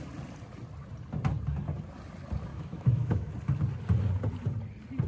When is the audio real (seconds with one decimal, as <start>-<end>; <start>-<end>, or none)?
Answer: 0.0-2.5; 3.3-5.1